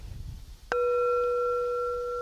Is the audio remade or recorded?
recorded